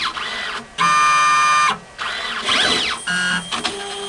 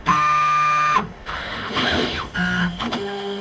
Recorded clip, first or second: first